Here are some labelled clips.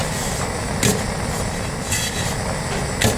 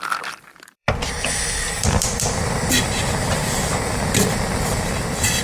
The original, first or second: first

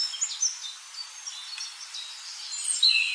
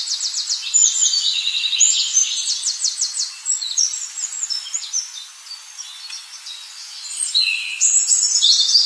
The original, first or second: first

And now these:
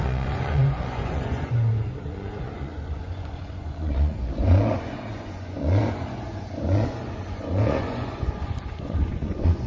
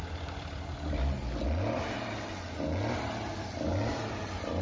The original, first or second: second